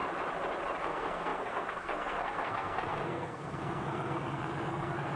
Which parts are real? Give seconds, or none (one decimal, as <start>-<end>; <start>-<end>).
0.0-0.8